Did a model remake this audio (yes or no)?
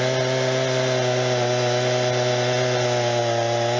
no